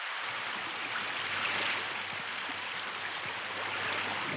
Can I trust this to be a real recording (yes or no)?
yes